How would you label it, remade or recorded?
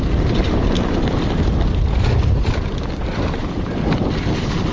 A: recorded